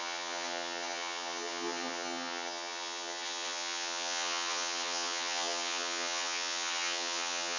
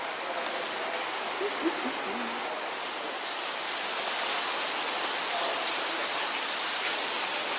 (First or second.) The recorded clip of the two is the second